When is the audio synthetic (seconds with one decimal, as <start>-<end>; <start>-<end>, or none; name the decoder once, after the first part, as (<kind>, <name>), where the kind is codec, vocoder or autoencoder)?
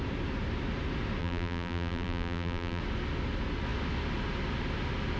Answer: 1.2-2.8 (vocoder, BigVGAN v2)